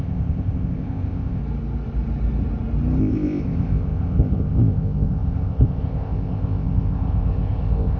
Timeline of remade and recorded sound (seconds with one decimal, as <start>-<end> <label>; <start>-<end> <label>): 0.0-1.4 remade; 1.4-3.0 recorded; 3.0-8.0 remade